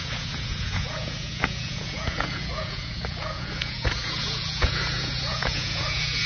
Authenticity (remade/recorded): remade